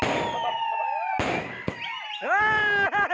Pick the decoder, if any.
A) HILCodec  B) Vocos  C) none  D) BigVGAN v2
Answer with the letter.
C